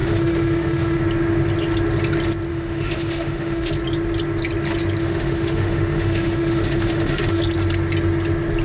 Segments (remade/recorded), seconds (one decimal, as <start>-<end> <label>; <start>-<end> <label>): 0.0-1.0 remade; 1.0-2.5 recorded; 2.5-3.7 remade; 3.7-5.0 recorded; 5.0-7.4 remade; 7.4-8.6 recorded